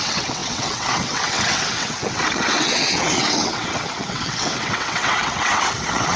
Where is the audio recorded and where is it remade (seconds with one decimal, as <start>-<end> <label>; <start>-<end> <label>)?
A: 0.0-6.2 remade